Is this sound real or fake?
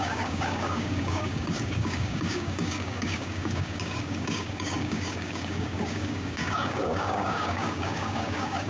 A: fake